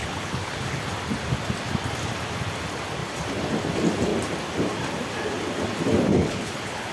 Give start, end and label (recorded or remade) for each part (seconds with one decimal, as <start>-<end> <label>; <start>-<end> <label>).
0.0-0.9 remade; 0.9-6.1 recorded; 6.1-6.9 remade